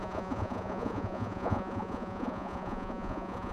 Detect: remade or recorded remade